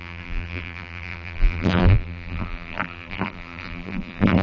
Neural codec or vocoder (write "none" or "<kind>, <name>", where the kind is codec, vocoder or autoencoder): vocoder, BigVGAN v2